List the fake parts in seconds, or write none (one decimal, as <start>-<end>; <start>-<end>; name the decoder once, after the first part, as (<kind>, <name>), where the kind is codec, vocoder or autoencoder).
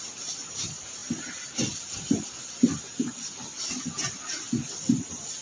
none